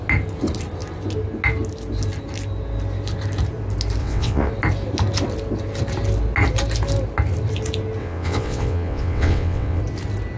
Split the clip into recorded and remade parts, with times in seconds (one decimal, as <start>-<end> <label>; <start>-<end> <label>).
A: 0.0-4.0 recorded; 4.0-4.5 remade; 4.5-8.0 recorded; 8.0-9.8 remade; 9.8-10.4 recorded